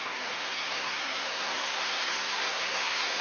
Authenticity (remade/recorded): remade